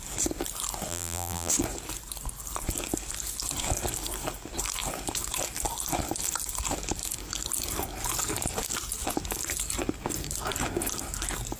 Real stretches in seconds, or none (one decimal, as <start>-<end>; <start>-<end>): 0.0-0.9; 1.5-11.6